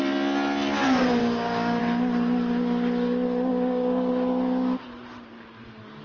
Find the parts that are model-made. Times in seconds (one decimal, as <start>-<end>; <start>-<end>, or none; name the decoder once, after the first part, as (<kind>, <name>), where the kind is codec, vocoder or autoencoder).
1.2-1.8 (codec, DAC); 3.5-4.1